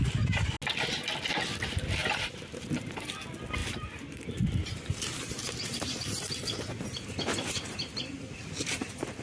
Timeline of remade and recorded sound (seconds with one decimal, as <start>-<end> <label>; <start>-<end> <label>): 0.0-2.0 recorded; 2.0-3.1 remade; 3.1-3.6 recorded; 3.6-8.5 remade; 8.5-9.2 recorded